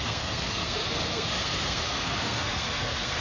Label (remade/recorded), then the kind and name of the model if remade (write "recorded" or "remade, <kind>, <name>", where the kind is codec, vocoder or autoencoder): remade, codec, SNAC